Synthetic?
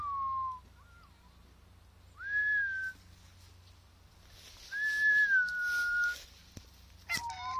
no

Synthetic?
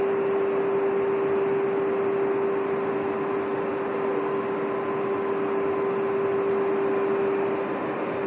no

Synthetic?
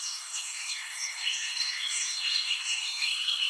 yes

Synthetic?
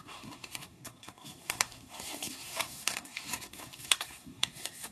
yes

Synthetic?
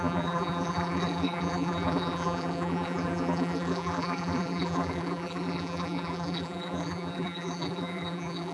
yes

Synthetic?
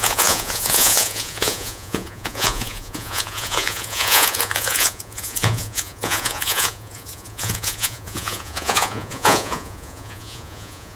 yes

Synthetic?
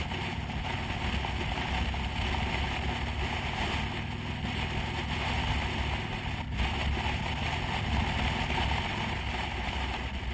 no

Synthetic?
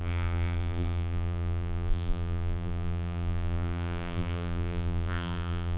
yes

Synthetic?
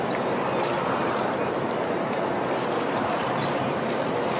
yes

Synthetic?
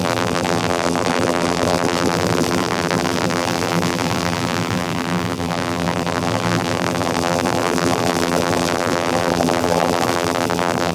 yes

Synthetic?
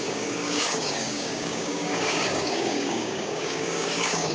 yes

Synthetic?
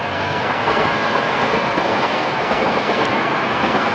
yes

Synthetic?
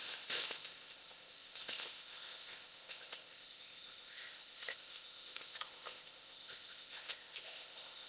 yes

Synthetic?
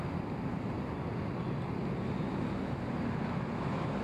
no